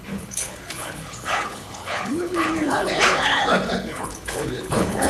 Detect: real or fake fake